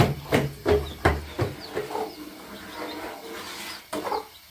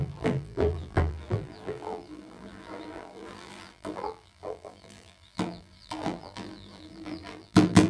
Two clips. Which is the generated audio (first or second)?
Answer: second